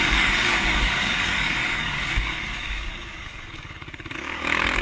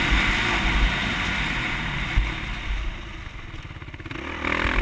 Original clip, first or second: second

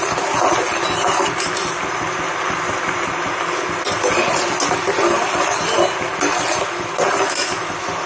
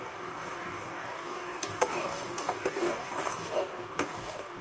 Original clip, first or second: first